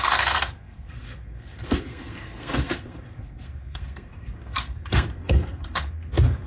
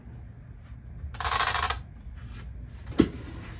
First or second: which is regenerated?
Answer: first